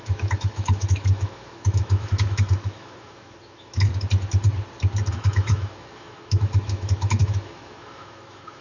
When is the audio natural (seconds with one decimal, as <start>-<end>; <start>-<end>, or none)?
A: 3.9-5.1